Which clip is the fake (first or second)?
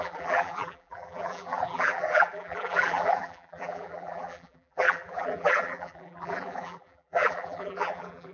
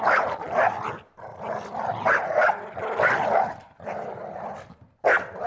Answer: first